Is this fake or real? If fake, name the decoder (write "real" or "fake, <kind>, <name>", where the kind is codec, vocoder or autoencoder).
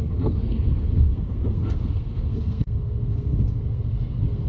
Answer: fake, codec, SNAC